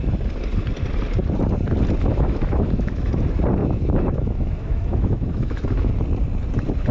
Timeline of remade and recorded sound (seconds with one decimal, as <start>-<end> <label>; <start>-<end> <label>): 0.0-2.1 recorded; 2.1-3.1 remade; 3.1-3.6 recorded; 3.6-5.9 remade; 5.9-6.9 recorded